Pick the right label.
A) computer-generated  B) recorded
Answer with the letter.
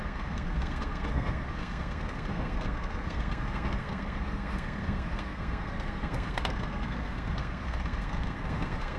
A